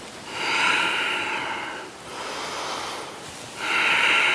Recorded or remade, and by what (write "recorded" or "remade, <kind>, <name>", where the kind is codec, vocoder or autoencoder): recorded